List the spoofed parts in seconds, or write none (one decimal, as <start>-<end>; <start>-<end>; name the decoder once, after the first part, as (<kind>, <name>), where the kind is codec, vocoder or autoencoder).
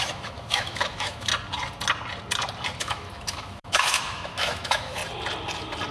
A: 0.0-1.3 (autoencoder, DAC-VAE); 2.8-5.0